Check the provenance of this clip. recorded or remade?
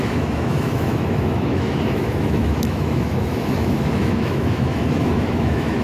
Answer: remade